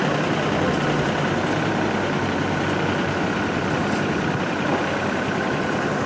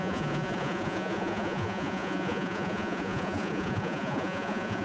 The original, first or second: first